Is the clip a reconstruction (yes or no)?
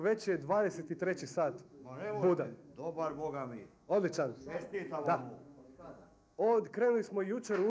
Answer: yes